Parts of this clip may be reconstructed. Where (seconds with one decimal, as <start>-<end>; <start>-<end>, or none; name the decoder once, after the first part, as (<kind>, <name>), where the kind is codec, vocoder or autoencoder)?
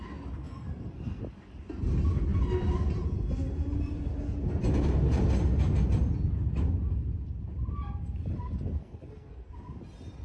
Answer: 0.4-1.2 (codec, SNAC); 8.8-9.5